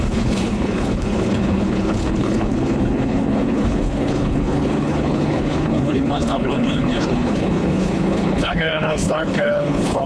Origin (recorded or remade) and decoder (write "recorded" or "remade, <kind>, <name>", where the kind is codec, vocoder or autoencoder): remade, codec, HILCodec